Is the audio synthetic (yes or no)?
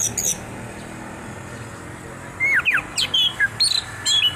no